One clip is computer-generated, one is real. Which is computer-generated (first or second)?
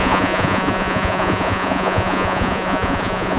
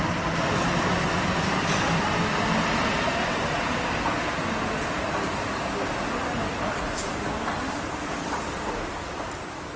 first